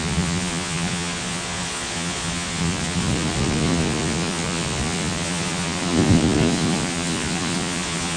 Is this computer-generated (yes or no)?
yes